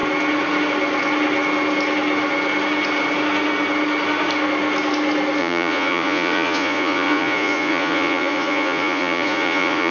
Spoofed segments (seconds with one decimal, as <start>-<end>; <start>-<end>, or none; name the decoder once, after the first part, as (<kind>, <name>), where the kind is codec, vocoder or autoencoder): 5.4-9.9 (vocoder, Vocos)